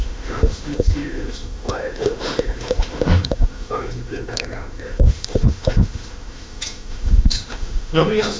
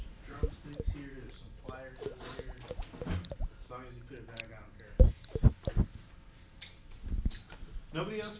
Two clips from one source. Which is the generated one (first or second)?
first